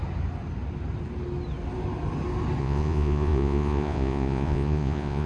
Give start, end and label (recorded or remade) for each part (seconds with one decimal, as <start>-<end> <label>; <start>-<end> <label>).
0.0-2.6 recorded; 2.6-5.3 remade